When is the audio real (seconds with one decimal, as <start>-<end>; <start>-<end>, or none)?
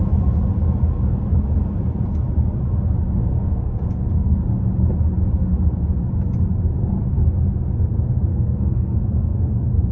0.0-3.2; 4.3-8.3; 9.5-9.9